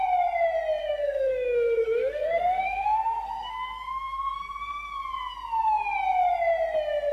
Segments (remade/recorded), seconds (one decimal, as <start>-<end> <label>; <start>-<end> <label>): 0.0-0.8 recorded; 0.8-4.7 remade; 4.7-7.1 recorded